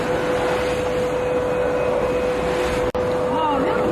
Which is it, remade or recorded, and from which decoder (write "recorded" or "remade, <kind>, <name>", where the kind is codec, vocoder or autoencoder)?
recorded